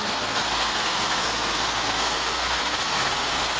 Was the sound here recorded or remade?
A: remade